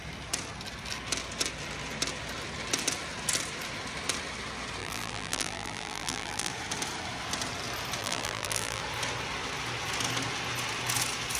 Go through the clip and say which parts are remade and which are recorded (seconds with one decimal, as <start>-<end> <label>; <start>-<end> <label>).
0.0-4.8 recorded; 4.8-6.5 remade; 6.5-8.0 recorded; 8.0-8.8 remade; 8.8-11.4 recorded